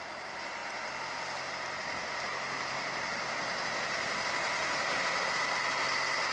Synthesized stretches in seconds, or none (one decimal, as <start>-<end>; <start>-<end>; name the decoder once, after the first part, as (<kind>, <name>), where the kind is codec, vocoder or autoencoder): none

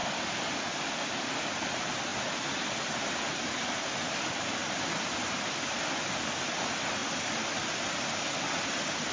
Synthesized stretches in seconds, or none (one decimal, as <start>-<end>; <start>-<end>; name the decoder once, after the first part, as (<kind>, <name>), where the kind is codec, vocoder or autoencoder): none

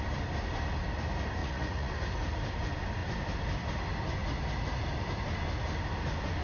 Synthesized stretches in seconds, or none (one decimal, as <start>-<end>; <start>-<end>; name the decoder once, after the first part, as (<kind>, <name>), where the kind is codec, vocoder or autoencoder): 1.4-1.9 (vocoder, Vocos)

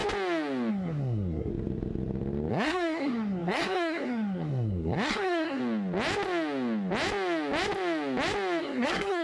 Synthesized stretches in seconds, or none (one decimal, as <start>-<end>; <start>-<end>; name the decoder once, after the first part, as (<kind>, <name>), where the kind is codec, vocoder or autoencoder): 0.7-1.5 (codec, SNAC); 2.5-5.6; 8.6-9.2

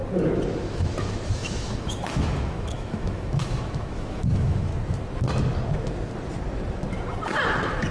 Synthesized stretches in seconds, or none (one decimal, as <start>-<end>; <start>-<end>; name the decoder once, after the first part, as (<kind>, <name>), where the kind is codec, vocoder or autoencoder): 0.6-4.7 (autoencoder, DAC-VAE)